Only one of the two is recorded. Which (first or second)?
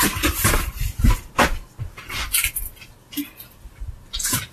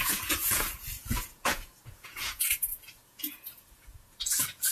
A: first